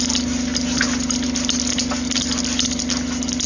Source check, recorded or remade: recorded